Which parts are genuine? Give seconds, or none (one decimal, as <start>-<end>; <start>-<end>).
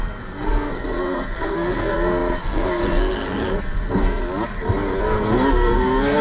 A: 4.2-5.0